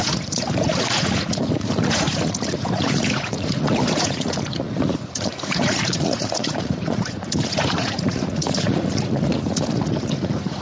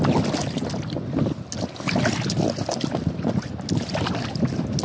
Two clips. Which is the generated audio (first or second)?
first